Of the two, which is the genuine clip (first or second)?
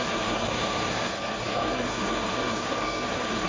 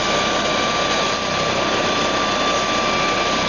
second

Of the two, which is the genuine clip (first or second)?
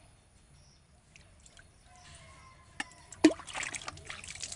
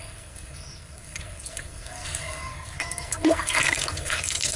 first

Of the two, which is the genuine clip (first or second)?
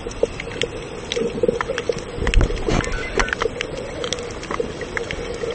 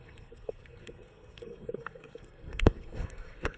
first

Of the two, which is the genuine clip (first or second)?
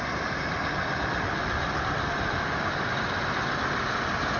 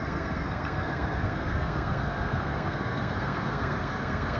first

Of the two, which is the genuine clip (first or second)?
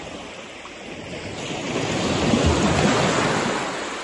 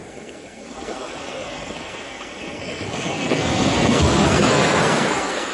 first